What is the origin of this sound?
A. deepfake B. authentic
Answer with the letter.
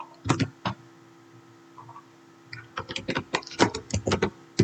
B